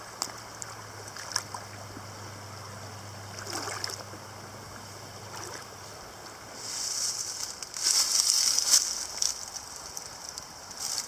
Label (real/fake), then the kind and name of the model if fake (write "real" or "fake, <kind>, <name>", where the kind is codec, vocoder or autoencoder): real